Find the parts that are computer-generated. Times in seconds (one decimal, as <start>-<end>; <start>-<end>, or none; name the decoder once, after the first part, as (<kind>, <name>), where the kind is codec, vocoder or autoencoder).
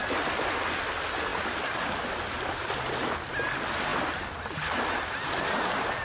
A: none